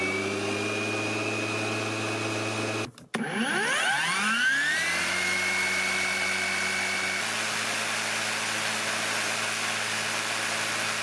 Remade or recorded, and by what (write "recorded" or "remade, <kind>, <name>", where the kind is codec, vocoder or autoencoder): recorded